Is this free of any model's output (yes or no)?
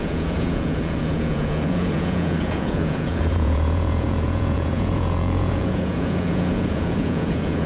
no